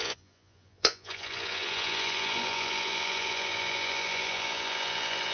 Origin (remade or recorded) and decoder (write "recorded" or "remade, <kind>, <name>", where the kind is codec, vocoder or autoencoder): remade, vocoder, Vocos